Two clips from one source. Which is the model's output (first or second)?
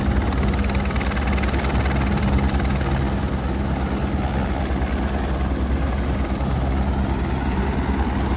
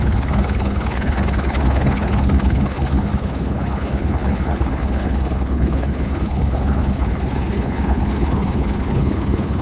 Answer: second